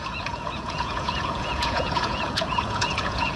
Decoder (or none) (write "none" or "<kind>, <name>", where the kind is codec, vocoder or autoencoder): vocoder, Vocos